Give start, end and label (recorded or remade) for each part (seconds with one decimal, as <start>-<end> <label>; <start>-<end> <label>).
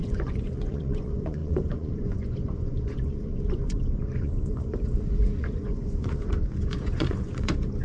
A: 0.0-7.8 remade